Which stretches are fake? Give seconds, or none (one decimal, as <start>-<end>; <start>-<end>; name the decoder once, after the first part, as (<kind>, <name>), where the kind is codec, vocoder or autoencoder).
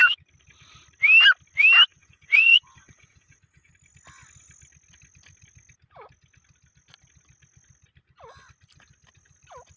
1.9-3.7 (vocoder, Vocos)